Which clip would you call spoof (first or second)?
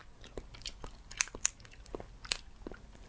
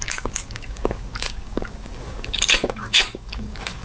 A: second